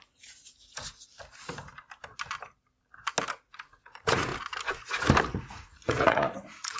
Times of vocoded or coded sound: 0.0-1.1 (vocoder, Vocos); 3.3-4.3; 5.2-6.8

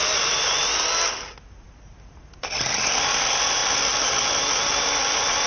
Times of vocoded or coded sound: none

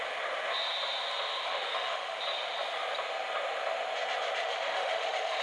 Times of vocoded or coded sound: 1.5-2.2 (autoencoder, DAC-VAE); 4.4-5.4

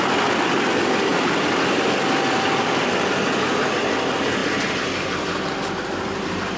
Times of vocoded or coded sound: 1.1-2.9 (vocoder, BigVGAN v2)

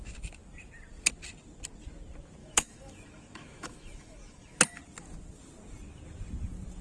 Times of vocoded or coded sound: 2.4-4.8 (autoencoder, DAC-VAE)